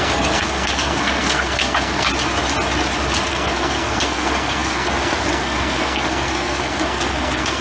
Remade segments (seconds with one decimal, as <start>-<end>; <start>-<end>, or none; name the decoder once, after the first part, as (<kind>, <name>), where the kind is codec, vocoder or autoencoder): 0.0-2.1 (codec, SNAC); 3.3-7.6